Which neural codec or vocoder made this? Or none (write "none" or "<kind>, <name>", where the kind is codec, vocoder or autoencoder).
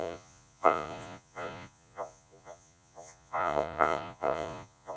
vocoder, Vocos